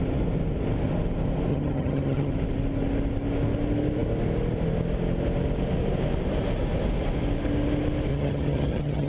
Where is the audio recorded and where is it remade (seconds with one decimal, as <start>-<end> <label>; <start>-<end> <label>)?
0.0-1.5 recorded; 1.5-2.3 remade; 2.3-8.1 recorded; 8.1-9.1 remade